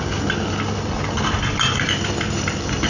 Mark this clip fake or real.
real